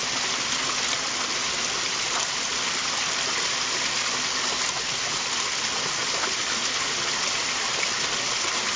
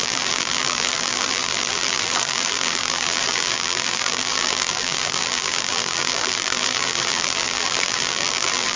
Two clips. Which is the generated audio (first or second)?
second